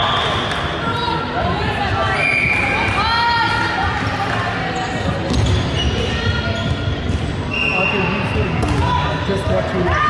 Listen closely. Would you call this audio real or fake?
real